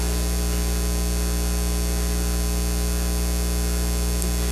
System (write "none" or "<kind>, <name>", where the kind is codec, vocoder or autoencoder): none